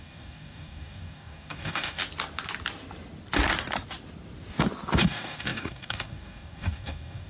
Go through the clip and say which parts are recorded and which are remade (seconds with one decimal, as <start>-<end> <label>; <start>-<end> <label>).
0.0-2.0 remade; 2.0-5.0 recorded; 5.0-7.3 remade